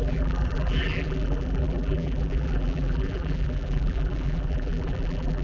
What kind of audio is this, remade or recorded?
remade